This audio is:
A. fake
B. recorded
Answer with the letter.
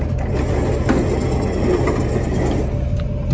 B